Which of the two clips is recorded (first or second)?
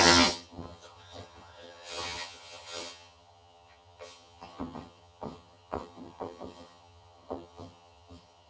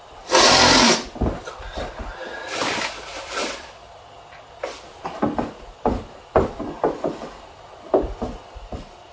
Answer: second